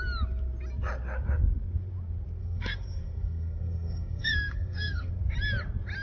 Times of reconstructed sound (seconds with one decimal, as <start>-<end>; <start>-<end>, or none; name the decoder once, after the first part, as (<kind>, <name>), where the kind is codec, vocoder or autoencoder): 2.4-5.1 (codec, SNAC)